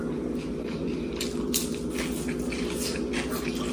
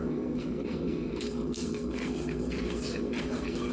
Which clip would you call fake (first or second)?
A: second